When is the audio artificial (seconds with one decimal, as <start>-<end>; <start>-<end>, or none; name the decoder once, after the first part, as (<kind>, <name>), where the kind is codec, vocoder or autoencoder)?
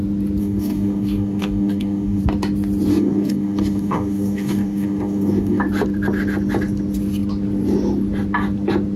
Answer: 0.4-2.2 (codec, DAC); 2.9-5.6